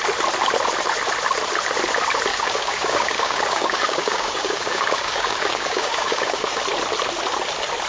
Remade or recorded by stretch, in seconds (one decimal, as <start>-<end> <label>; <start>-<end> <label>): 0.0-2.3 recorded; 2.3-6.6 remade; 6.6-7.9 recorded